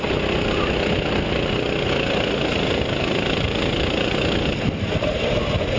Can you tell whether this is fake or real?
real